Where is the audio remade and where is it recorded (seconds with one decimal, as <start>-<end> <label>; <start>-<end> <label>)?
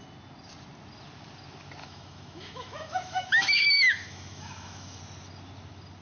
0.0-1.8 recorded; 1.8-5.0 remade; 5.0-6.0 recorded